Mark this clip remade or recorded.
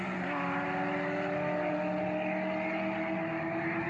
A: recorded